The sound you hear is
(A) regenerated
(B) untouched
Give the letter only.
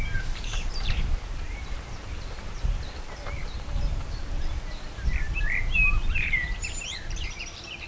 A